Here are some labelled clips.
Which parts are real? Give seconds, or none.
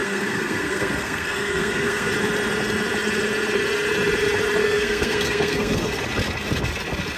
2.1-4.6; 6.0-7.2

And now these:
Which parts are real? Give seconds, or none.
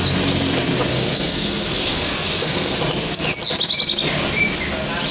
0.0-0.9; 2.8-5.1